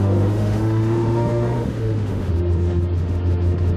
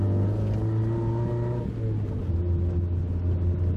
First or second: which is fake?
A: first